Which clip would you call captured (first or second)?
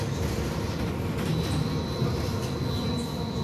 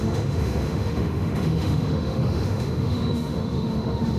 first